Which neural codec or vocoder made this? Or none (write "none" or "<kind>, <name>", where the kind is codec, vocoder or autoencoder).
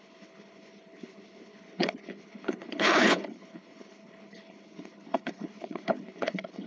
codec, HILCodec